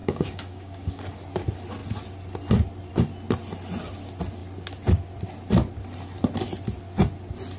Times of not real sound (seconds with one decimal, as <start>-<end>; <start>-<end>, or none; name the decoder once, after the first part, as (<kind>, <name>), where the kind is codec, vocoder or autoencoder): 0.0-1.0 (codec, DAC)